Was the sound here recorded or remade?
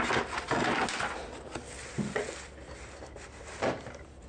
recorded